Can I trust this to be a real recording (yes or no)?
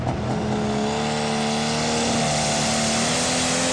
yes